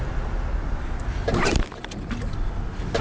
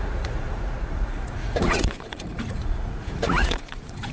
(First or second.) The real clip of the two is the first